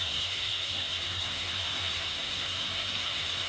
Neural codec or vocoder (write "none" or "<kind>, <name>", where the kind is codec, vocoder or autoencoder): codec, SNAC